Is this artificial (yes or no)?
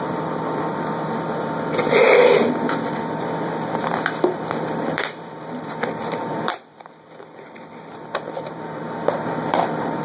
yes